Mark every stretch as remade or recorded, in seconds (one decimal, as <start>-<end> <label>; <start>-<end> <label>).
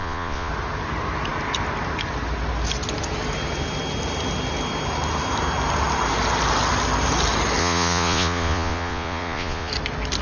0.0-0.5 remade; 0.5-7.6 recorded; 7.6-9.7 remade; 9.7-10.2 recorded